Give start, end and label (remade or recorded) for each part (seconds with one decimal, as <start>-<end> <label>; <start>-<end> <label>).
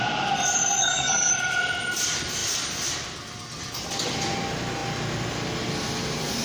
0.0-0.8 recorded; 0.8-1.3 remade; 1.3-6.4 recorded